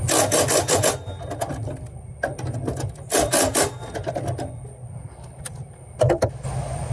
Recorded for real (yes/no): yes